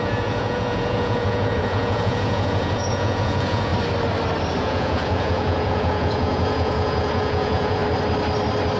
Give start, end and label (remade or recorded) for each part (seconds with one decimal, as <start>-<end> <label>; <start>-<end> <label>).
0.0-3.7 remade; 3.7-4.6 recorded; 4.6-7.8 remade; 7.8-8.8 recorded